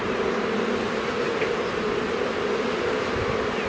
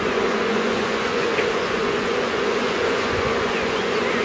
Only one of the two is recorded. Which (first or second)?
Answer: first